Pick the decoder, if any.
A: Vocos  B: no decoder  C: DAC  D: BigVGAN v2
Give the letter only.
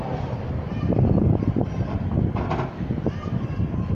B